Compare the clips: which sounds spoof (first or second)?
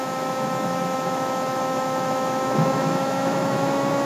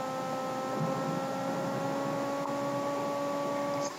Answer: first